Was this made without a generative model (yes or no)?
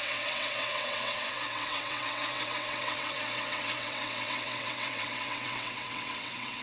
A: no